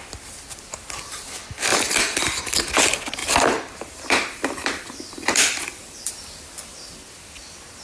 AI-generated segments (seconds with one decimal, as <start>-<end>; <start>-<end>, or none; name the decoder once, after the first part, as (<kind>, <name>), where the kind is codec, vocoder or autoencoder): 1.7-2.5 (vocoder, BigVGAN v2); 3.2-6.1